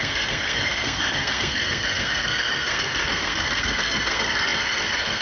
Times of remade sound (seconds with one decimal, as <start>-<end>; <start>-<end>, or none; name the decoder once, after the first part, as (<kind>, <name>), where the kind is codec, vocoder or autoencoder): 0.0-5.2 (codec, SNAC)